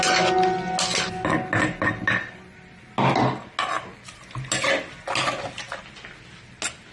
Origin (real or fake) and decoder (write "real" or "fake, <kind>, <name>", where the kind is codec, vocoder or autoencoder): real